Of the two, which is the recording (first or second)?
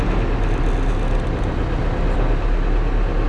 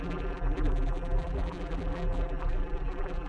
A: first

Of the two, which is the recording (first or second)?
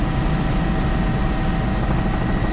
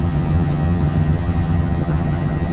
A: first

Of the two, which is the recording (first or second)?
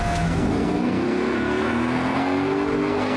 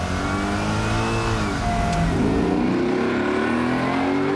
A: second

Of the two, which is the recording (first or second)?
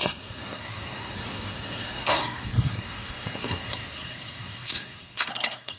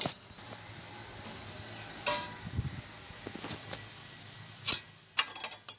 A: second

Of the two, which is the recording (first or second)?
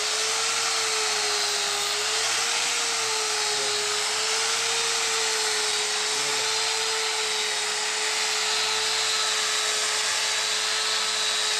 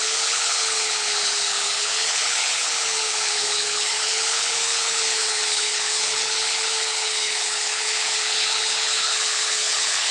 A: first